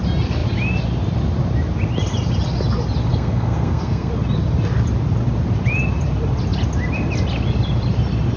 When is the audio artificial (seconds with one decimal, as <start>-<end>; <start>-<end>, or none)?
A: 3.1-4.1